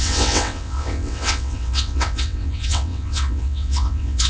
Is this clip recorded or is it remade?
remade